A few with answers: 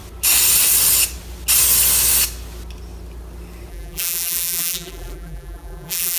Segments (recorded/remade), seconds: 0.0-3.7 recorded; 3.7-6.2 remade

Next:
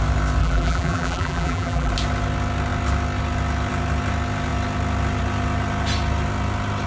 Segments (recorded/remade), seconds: 0.0-0.4 recorded; 0.4-1.9 remade; 1.9-6.9 recorded

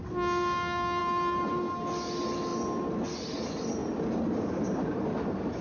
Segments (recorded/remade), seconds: 0.0-1.0 recorded; 1.0-1.6 remade; 1.6-2.5 recorded; 2.5-3.0 remade; 3.0-3.8 recorded; 3.8-5.6 remade

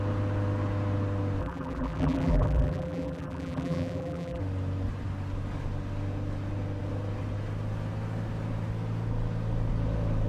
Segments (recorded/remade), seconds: 0.0-1.4 recorded; 1.4-4.4 remade; 4.4-10.3 recorded